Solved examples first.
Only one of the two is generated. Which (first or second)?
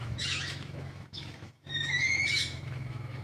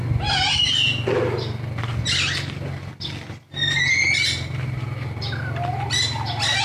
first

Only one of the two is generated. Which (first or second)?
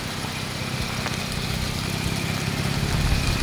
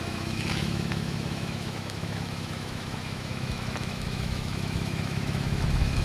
second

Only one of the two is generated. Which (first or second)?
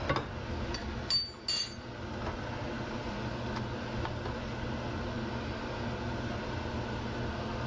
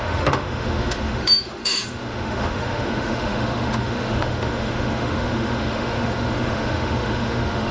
second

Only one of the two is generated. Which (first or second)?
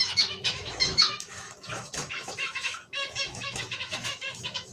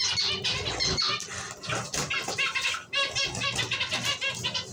first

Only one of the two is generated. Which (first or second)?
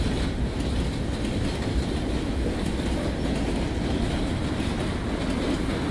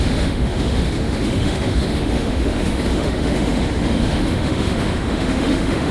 second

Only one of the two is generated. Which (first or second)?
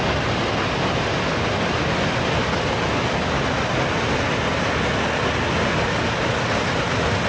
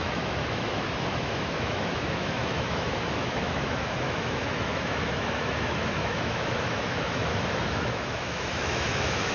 second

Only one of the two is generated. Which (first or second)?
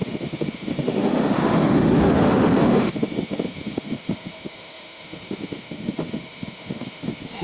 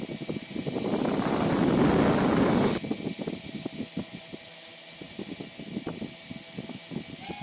first